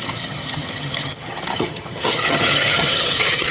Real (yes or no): no